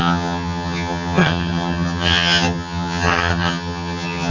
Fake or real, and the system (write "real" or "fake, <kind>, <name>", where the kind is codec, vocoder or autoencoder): fake, vocoder, HiFi-GAN